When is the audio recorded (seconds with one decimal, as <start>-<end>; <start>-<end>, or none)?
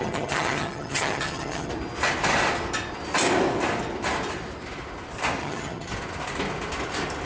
1.7-5.4; 5.9-7.3